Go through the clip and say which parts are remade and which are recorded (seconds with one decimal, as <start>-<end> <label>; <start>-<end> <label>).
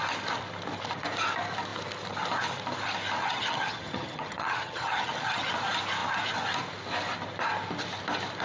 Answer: 0.0-3.2 recorded; 3.2-5.5 remade; 5.5-8.4 recorded